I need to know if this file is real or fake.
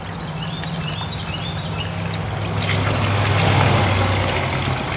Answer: real